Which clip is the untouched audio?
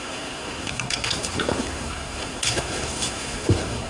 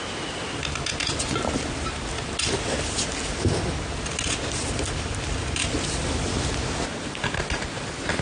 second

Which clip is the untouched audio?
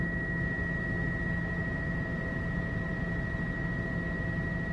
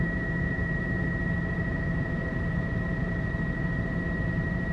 first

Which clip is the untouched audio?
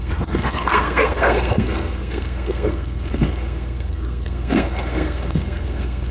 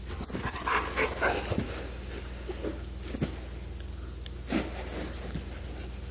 second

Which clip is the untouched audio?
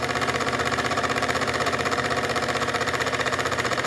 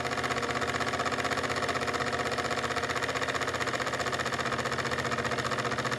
second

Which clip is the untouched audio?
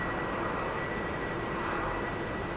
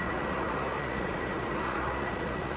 first